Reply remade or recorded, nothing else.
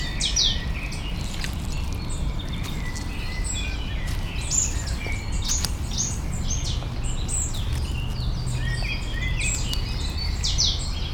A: recorded